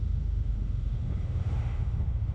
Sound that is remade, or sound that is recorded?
remade